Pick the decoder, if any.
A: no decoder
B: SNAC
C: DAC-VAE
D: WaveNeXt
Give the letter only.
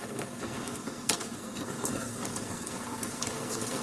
B